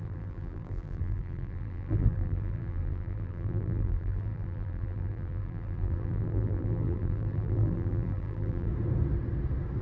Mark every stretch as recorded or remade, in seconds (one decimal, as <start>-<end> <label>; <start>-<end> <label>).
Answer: 0.0-8.7 remade; 8.7-9.8 recorded